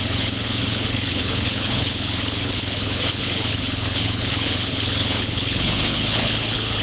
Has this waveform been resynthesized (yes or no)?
yes